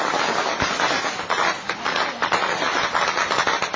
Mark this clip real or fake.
real